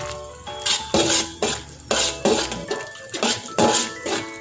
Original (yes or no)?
yes